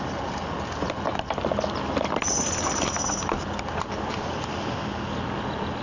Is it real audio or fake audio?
real